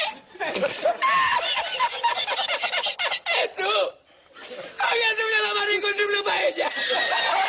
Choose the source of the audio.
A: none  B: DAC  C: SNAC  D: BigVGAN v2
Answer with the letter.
A